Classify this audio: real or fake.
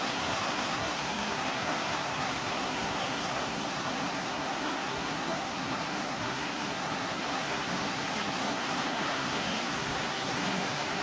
fake